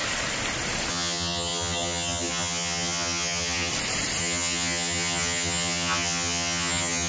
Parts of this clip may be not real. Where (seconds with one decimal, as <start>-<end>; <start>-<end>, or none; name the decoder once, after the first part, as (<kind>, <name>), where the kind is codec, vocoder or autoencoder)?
0.9-3.7 (vocoder, HiFi-GAN); 4.2-7.1